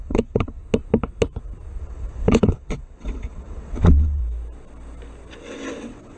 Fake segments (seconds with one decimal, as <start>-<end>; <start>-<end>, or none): 0.0-0.6; 1.8-4.2; 5.8-6.2